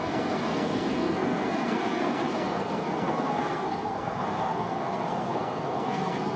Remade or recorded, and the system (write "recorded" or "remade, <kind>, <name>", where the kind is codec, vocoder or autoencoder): remade, codec, SNAC